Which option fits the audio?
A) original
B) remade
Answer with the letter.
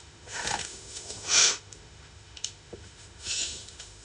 B